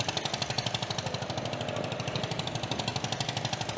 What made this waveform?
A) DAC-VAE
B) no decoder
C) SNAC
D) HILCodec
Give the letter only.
B